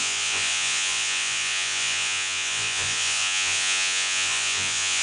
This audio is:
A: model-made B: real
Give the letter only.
A